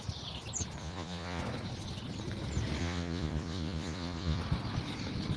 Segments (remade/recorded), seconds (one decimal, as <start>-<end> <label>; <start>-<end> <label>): 0.0-0.8 recorded; 0.8-1.4 remade; 1.4-2.8 recorded; 2.8-4.4 remade; 4.4-5.4 recorded